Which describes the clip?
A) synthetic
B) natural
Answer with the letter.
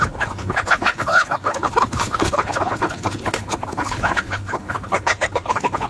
A